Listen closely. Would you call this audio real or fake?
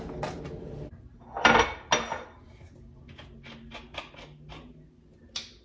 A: real